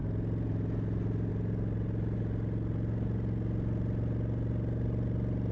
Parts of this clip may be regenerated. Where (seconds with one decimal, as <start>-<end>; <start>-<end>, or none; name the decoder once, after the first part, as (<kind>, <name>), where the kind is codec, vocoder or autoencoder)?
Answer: none